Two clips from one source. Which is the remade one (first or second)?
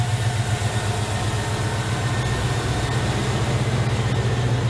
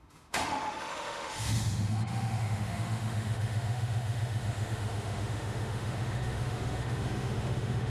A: second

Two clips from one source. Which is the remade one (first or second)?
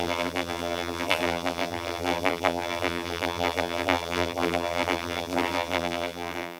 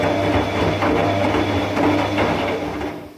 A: first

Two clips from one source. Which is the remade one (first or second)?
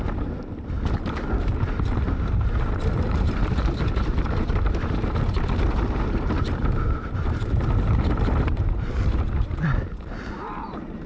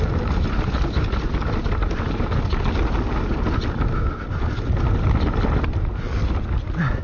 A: first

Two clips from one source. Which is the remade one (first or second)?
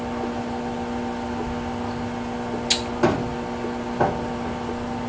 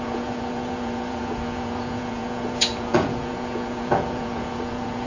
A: second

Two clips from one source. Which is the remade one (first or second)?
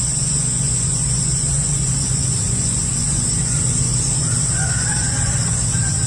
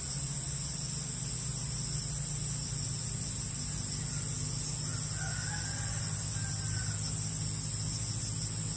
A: first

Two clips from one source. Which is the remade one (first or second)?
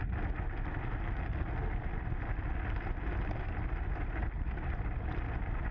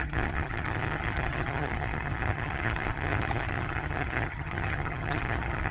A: second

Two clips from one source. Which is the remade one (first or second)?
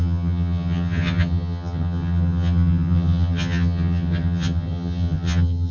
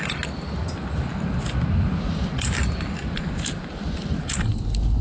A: first